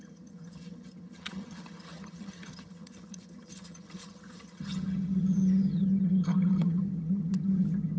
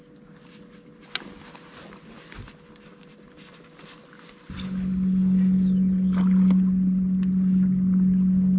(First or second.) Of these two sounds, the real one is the second